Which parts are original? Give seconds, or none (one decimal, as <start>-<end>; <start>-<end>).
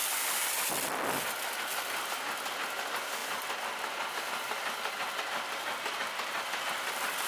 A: 0.0-7.3